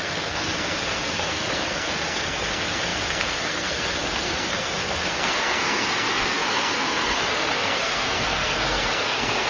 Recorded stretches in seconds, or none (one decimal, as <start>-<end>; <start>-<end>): none